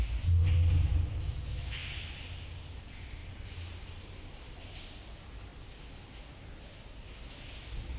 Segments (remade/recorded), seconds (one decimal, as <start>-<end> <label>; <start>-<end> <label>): 0.0-8.0 recorded